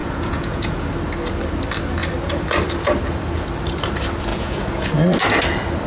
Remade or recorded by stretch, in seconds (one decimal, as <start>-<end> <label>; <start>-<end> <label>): 0.0-0.9 remade; 0.9-4.3 recorded; 4.3-4.9 remade; 4.9-5.9 recorded